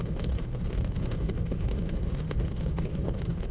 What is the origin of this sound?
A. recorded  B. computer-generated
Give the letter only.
B